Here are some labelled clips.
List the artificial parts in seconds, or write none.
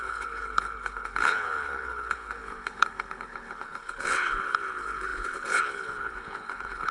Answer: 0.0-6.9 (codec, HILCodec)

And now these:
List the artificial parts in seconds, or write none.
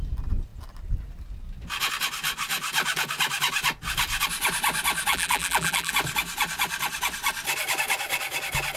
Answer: 5.1-5.9 (vocoder, BigVGAN v2)